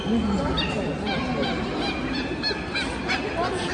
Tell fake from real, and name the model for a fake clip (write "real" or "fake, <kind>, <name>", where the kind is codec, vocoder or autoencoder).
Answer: real